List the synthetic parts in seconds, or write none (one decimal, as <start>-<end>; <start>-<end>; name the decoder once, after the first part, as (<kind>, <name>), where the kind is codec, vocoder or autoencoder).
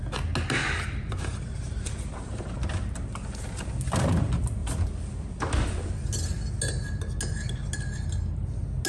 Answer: 0.6-3.7 (vocoder, BigVGAN v2)